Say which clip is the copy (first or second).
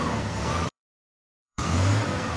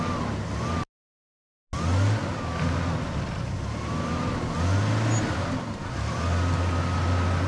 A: first